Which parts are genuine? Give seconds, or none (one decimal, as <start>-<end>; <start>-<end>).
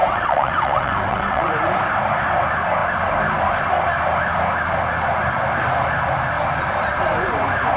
1.5-7.8